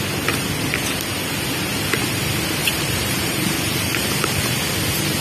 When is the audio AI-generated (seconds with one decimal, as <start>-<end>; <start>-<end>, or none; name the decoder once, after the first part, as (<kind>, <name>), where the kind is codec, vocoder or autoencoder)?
2.6-4.1 (vocoder, BigVGAN v2)